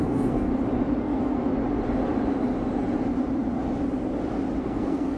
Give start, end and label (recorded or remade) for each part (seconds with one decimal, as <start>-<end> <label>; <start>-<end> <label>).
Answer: 0.0-0.5 remade; 0.5-1.0 recorded; 1.0-1.5 remade; 1.5-4.6 recorded; 4.6-5.2 remade